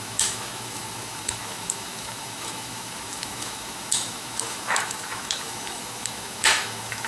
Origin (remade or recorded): remade